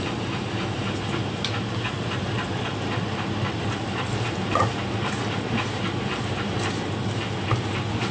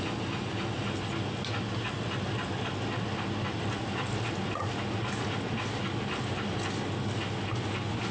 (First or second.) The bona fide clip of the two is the second